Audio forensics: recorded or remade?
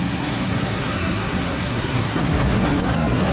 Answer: remade